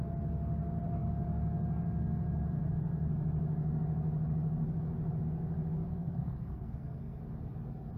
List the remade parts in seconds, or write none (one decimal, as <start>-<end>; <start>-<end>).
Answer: 5.9-7.2